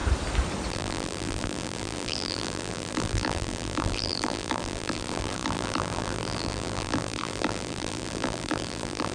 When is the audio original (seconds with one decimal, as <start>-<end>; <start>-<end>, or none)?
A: 0.0-0.7